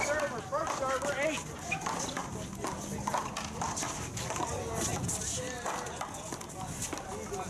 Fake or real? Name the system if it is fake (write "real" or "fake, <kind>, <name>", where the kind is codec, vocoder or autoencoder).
real